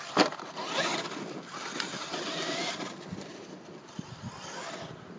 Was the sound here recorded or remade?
recorded